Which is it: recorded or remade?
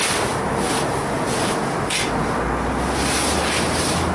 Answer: recorded